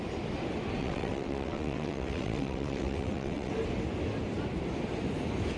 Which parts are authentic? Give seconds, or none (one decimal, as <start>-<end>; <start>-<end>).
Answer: 0.0-0.8; 3.5-5.6